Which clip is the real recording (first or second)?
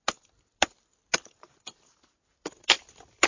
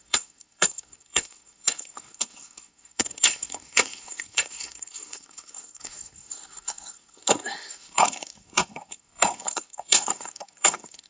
first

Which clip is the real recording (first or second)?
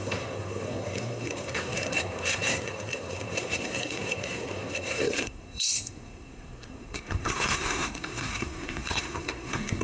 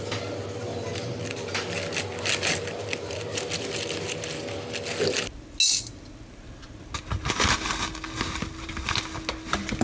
second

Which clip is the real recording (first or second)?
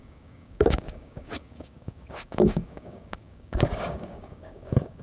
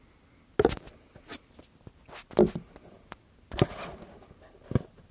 second